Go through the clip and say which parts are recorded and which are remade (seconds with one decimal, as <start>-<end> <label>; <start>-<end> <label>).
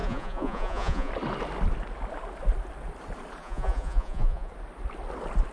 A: 0.0-1.1 remade; 1.1-3.4 recorded; 3.4-4.5 remade; 4.5-5.5 recorded